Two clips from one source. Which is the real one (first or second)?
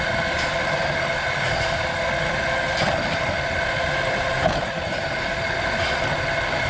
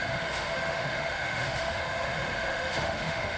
first